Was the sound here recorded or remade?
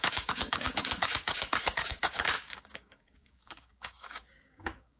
remade